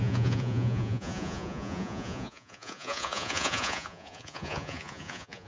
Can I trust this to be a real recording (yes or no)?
no